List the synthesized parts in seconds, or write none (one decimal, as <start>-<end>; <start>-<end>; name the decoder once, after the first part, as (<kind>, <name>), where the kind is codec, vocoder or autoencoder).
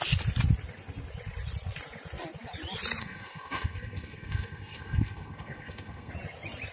3.0-6.1 (codec, SNAC)